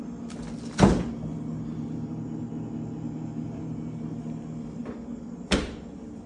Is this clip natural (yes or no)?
yes